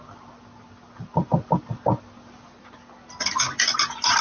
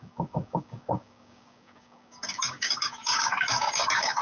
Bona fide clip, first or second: first